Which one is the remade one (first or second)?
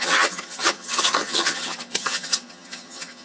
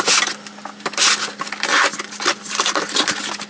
first